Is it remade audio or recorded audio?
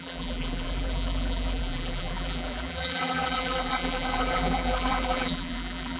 remade